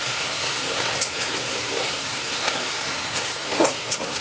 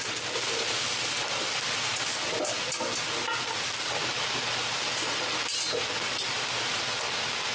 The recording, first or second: second